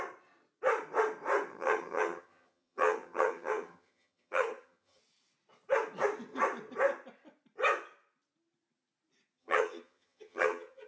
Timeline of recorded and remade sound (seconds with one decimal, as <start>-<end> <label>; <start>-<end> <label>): 0.0-1.5 recorded; 1.5-5.0 remade; 5.0-9.4 recorded; 9.4-10.9 remade